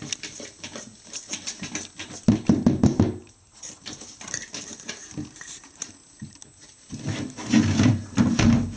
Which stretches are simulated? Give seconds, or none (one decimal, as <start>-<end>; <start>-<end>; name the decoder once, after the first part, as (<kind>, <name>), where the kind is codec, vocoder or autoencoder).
3.2-5.9 (vocoder, BigVGAN v2)